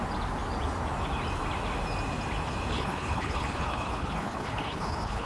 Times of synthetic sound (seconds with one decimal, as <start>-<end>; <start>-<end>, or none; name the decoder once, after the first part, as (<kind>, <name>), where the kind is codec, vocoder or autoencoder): 2.7-5.3 (codec, HILCodec)